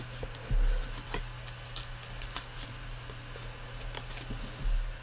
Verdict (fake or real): real